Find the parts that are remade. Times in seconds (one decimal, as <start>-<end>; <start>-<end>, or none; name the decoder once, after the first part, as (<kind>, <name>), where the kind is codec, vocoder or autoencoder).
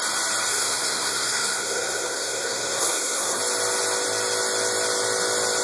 0.5-3.4 (codec, SNAC)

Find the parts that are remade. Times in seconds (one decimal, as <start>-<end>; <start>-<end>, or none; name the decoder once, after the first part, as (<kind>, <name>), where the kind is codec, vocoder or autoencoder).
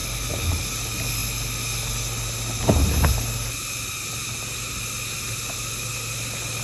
none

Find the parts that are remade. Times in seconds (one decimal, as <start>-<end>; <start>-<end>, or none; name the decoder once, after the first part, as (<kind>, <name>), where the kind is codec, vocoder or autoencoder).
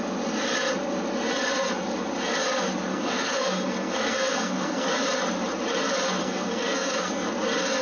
2.9-4.9 (codec, SNAC); 6.2-7.3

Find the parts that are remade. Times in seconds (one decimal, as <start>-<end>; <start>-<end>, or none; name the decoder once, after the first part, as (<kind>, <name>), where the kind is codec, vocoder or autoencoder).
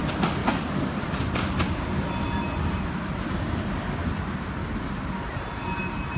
none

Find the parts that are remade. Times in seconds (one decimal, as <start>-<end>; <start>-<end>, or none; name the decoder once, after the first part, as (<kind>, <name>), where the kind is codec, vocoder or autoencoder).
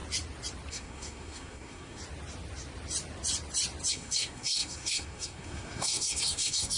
0.7-2.0 (codec, SNAC); 3.9-6.8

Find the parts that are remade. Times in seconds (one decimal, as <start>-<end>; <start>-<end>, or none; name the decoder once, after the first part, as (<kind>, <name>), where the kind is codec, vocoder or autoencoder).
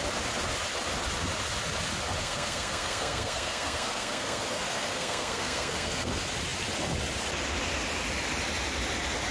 2.2-6.1 (codec, SNAC)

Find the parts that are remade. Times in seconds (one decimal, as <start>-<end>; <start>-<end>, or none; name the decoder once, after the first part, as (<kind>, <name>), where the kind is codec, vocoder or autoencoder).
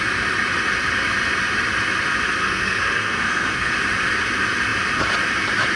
2.4-3.7 (codec, SNAC)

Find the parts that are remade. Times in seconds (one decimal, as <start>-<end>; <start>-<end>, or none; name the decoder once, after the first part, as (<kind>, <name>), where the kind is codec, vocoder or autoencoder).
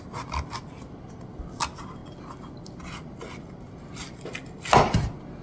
none